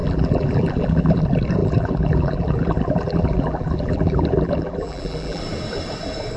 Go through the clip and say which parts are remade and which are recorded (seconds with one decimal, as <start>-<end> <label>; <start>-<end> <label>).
0.0-1.2 remade; 1.2-1.6 recorded; 1.6-5.4 remade; 5.4-6.4 recorded

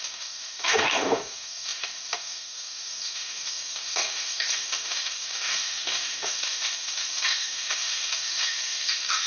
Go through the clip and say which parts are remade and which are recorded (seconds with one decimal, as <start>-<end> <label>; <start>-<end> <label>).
0.0-9.3 remade

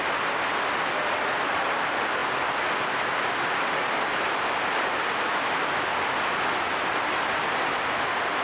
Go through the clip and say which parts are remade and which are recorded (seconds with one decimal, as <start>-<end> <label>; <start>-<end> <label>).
0.0-8.4 recorded

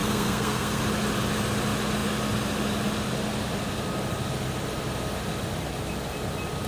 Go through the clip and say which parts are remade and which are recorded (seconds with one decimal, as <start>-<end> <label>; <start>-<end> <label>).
0.0-0.8 remade; 0.8-6.7 recorded

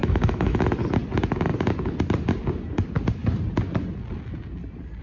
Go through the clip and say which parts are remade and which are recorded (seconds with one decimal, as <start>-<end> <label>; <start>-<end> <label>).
0.0-0.6 remade; 0.6-5.0 recorded

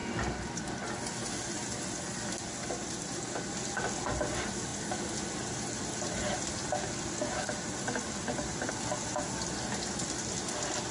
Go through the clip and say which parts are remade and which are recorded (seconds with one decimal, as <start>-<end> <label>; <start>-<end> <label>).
0.0-10.9 recorded

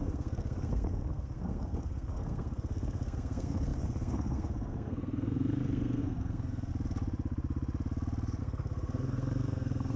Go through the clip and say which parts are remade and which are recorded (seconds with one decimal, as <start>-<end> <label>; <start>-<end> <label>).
0.0-6.7 remade; 6.7-8.4 recorded; 8.4-10.0 remade